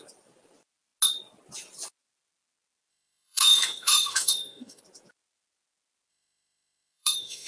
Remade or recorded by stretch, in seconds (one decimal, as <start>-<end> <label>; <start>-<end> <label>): 0.0-2.9 recorded; 2.9-4.8 remade; 4.8-6.1 recorded; 6.1-7.5 remade